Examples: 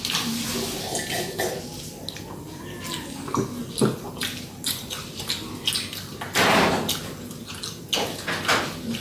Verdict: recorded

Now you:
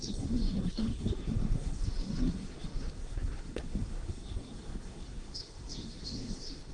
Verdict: remade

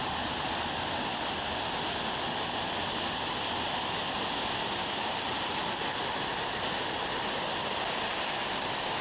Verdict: recorded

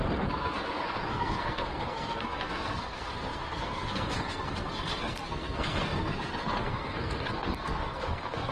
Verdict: remade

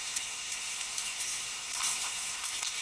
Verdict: remade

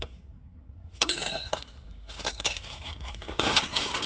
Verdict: remade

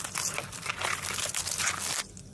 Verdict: recorded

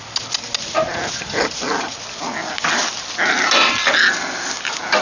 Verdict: recorded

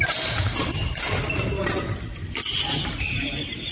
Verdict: recorded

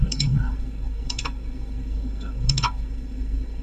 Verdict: remade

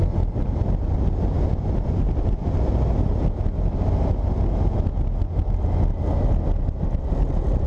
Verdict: recorded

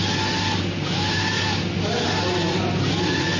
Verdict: recorded